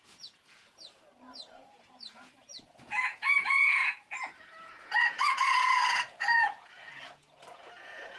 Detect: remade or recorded remade